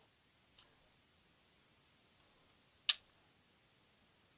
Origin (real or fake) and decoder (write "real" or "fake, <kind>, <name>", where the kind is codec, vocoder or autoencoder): real